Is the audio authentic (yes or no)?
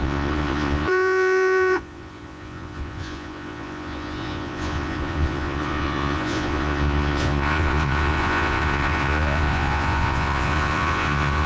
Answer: no